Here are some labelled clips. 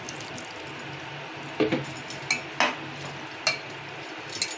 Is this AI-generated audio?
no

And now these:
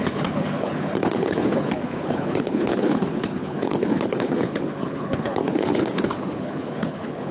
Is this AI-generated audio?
yes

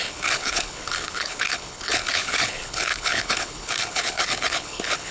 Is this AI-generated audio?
yes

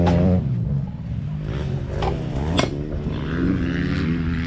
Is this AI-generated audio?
no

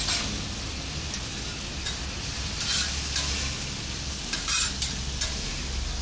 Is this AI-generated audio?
no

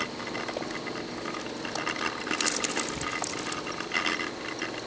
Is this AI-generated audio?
no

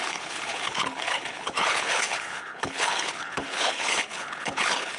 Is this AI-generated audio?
yes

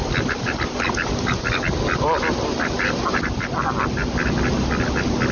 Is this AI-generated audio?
no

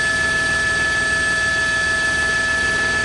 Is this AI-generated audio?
no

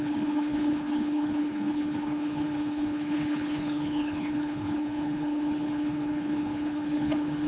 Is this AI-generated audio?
yes